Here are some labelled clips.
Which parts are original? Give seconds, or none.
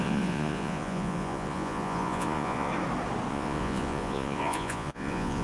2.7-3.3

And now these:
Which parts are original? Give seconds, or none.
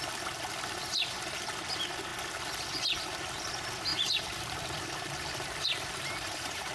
0.0-3.9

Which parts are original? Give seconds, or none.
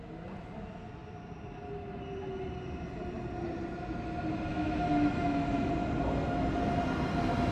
0.0-4.5; 5.7-7.5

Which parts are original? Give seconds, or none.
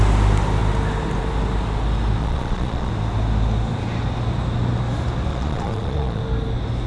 0.0-2.2; 2.9-5.3; 6.2-6.9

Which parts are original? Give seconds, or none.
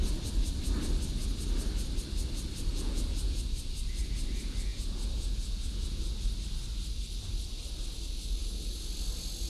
0.0-2.7; 3.4-4.7; 6.1-8.4; 8.9-9.5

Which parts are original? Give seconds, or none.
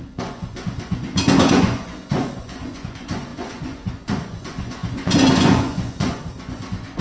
none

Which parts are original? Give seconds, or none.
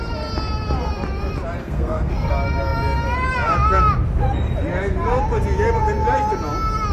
0.0-1.6; 2.3-6.9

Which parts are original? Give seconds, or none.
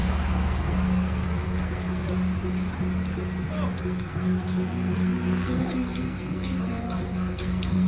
2.0-3.8